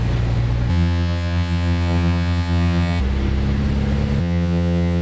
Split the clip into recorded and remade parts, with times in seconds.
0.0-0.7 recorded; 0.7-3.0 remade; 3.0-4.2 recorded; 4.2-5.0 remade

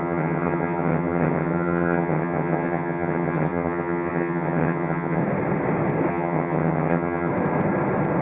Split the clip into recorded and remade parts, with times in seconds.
0.0-5.2 remade; 5.2-6.1 recorded; 6.1-7.3 remade; 7.3-8.2 recorded

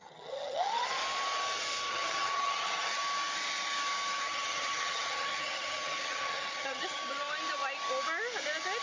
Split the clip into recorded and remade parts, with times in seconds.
0.0-1.0 remade; 1.0-1.9 recorded; 1.9-3.0 remade; 3.0-4.2 recorded; 4.2-7.0 remade; 7.0-8.8 recorded

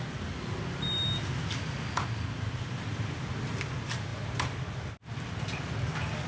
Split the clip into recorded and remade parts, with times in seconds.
0.0-6.3 recorded

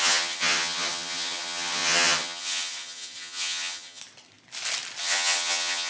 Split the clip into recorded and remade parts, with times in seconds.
0.0-4.0 remade; 4.0-5.0 recorded; 5.0-5.9 remade

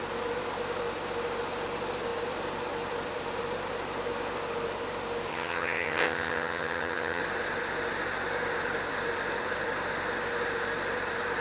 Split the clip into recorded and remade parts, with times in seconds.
0.0-5.3 recorded; 5.3-7.2 remade; 7.2-11.4 recorded